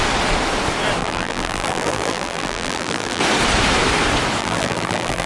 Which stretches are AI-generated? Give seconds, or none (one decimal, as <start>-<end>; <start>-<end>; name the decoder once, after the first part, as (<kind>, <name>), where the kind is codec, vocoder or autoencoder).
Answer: 1.0-3.2 (vocoder, BigVGAN v2); 4.4-5.3